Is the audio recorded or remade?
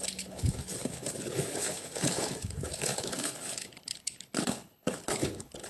remade